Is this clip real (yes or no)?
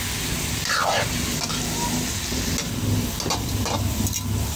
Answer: yes